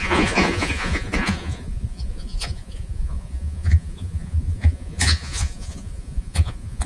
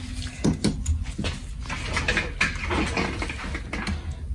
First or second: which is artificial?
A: first